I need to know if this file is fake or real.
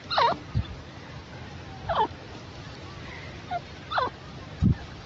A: real